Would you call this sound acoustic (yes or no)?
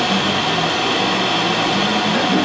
yes